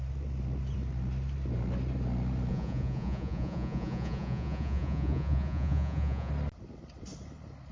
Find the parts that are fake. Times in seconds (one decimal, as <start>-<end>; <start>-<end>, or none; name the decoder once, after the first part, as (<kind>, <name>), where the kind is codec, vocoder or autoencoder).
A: 2.5-6.3 (vocoder, Vocos)